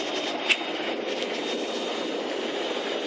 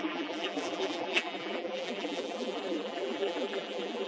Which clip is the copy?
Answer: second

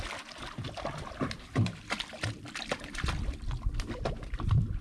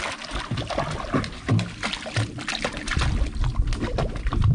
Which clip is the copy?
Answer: first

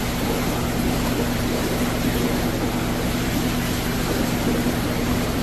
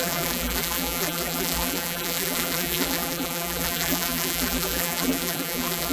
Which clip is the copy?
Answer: second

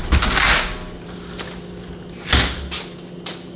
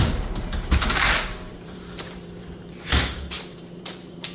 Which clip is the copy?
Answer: second